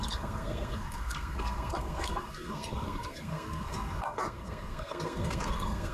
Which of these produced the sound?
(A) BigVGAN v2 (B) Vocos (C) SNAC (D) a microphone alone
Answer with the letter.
C